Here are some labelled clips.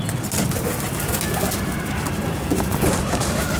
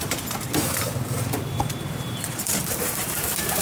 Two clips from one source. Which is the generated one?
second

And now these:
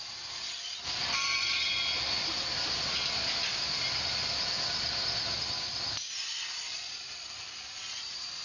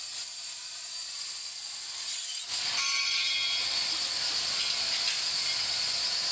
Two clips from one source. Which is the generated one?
first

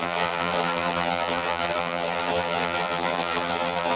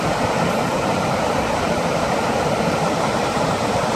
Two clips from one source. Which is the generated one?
first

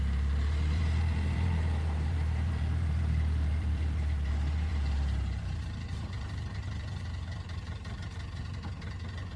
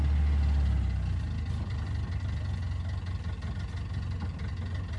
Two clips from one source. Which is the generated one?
first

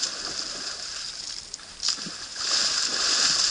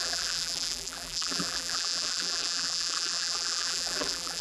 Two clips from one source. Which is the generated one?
second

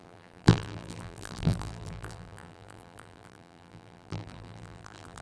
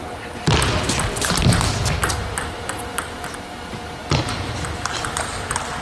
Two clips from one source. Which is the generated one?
first